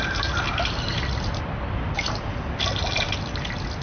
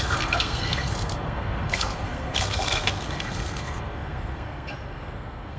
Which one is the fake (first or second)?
second